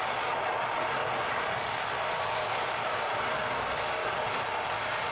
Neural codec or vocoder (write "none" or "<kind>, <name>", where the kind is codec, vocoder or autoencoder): none